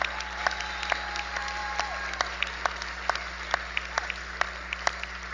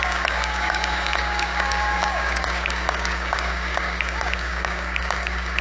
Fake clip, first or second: second